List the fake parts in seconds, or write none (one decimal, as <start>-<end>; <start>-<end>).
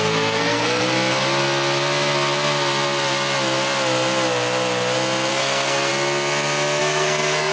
0.0-0.8; 5.3-5.9; 6.8-7.5